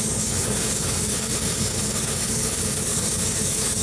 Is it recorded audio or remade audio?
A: remade